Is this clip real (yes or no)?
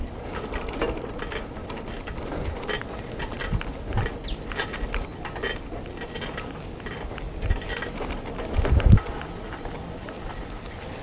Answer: yes